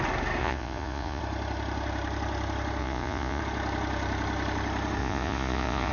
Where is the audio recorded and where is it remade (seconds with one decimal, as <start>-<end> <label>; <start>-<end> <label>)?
0.0-0.4 recorded; 0.4-1.2 remade; 1.2-2.8 recorded; 2.8-3.4 remade; 3.4-5.0 recorded; 5.0-5.9 remade